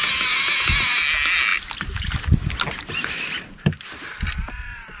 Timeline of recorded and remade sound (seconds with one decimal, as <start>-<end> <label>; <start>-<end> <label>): 0.0-5.0 recorded